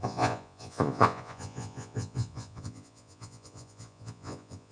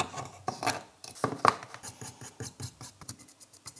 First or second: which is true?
second